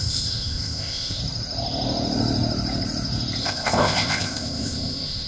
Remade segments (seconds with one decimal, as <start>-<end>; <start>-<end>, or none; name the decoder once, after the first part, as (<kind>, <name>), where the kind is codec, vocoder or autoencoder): 0.0-1.2 (codec, ZipCodec); 3.4-5.3